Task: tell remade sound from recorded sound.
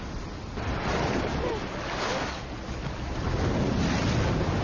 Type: recorded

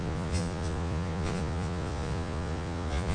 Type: remade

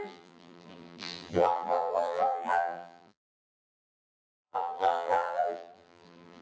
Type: remade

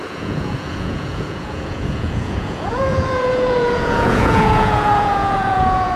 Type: remade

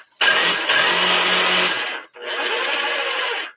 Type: recorded